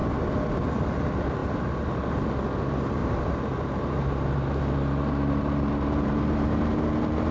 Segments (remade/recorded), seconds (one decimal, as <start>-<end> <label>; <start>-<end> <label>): 0.0-1.4 recorded; 1.4-2.2 remade; 2.2-3.0 recorded; 3.0-6.8 remade; 6.8-7.3 recorded